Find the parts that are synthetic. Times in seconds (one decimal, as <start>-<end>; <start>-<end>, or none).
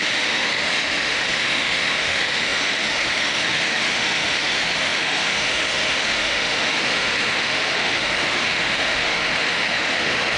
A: 0.0-10.4